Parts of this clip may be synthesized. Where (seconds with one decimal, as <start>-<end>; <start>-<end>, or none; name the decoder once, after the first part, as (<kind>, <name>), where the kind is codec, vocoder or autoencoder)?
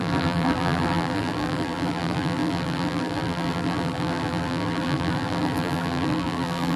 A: 0.0-6.8 (vocoder, BigVGAN v2)